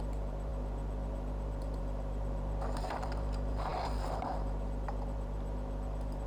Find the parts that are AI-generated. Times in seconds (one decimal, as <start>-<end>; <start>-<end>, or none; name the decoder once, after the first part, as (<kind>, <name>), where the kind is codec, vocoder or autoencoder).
0.0-6.3 (vocoder, BigVGAN v2)

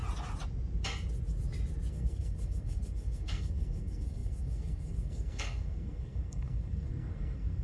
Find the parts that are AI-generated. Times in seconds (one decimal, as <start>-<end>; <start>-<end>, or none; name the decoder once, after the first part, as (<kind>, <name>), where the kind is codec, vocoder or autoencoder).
1.9-7.6 (codec, SNAC)